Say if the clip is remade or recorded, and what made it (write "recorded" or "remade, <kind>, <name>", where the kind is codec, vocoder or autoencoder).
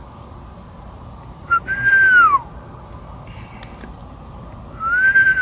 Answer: recorded